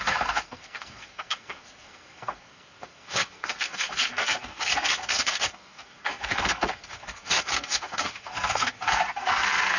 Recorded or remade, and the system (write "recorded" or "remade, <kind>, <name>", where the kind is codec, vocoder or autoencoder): remade, codec, SNAC